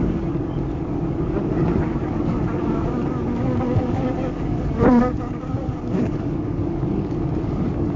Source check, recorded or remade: remade